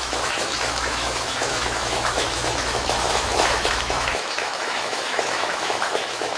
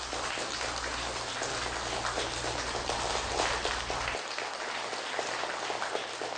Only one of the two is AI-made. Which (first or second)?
first